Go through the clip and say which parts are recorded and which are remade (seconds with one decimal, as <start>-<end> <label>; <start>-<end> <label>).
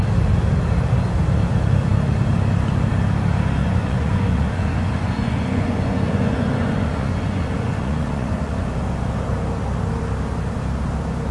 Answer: 0.0-3.6 recorded; 3.6-8.7 remade; 8.7-11.3 recorded